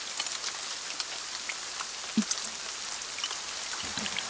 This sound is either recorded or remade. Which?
recorded